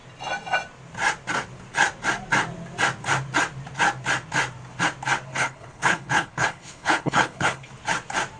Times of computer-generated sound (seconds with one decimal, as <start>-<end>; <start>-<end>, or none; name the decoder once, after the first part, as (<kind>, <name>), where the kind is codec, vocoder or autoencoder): 5.3-7.7 (codec, HILCodec)